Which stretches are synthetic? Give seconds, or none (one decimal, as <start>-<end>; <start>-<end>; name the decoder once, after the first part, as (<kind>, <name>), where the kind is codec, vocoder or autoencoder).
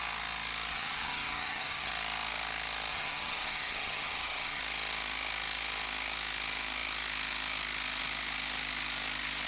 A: 0.7-1.9 (vocoder, HiFi-GAN); 2.9-4.6